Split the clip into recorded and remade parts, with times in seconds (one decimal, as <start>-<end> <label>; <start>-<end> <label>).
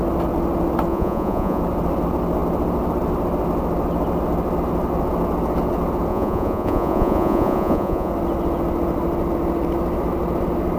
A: 0.0-0.9 recorded; 0.9-1.6 remade; 1.6-6.1 recorded; 6.1-8.1 remade; 8.1-10.8 recorded